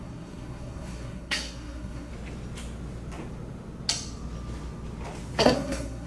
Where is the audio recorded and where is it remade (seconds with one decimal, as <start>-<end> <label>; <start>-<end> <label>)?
0.0-2.1 remade; 2.1-5.4 recorded; 5.4-6.1 remade